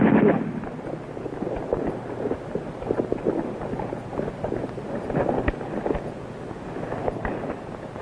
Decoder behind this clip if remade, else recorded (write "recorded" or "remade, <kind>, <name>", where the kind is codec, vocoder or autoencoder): recorded